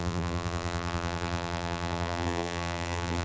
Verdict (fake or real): fake